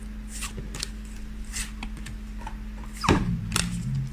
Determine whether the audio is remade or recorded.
recorded